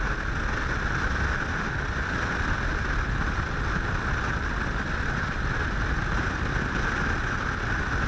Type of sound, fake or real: real